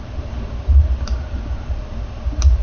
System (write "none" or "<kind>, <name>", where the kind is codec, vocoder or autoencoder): vocoder, BigVGAN v2